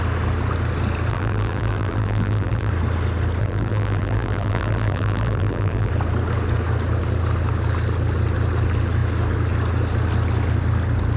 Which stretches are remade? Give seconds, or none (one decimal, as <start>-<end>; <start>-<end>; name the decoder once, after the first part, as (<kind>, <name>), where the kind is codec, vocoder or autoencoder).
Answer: 1.1-2.7 (vocoder, BigVGAN v2); 3.4-5.9